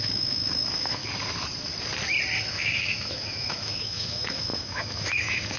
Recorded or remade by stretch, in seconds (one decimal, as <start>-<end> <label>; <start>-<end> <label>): 0.0-1.0 remade; 1.0-2.5 recorded; 2.5-5.6 remade